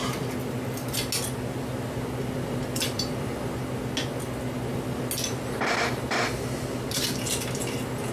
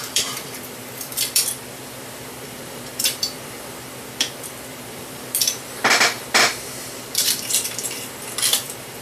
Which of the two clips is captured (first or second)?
first